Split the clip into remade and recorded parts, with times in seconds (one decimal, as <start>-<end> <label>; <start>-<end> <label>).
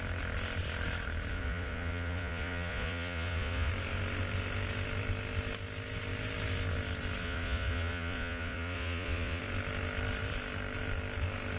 0.0-1.3 recorded; 1.3-3.7 remade; 3.7-7.2 recorded; 7.2-9.4 remade; 9.4-11.6 recorded